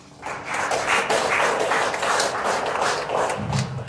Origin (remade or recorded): recorded